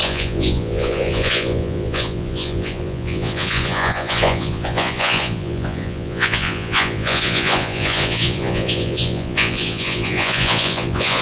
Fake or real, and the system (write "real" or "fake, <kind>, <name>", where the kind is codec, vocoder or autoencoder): fake, vocoder, Vocos